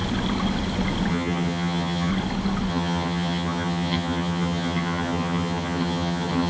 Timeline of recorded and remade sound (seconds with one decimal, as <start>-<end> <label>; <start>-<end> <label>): 0.0-1.1 recorded; 1.1-2.1 remade; 2.1-2.7 recorded; 2.7-6.5 remade

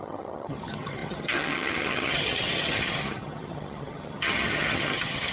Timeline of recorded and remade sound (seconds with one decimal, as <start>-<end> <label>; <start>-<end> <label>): 0.0-5.3 remade